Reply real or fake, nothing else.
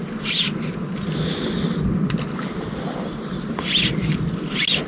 real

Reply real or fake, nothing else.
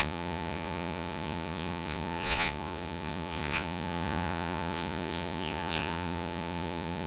fake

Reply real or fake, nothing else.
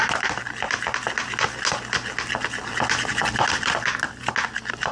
real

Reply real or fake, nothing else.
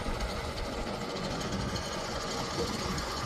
fake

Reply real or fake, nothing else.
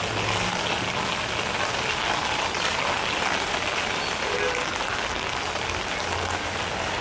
real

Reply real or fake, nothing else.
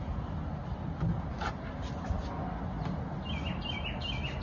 real